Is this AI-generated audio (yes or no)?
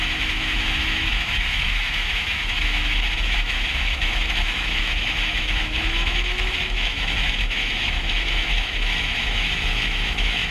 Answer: yes